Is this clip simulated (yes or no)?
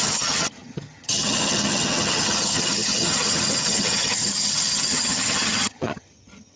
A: yes